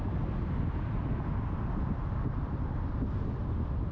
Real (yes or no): yes